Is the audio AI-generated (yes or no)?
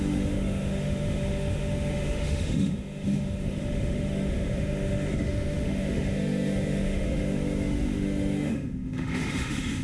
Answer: yes